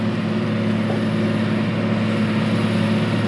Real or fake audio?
real